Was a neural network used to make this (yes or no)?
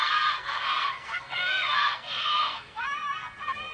yes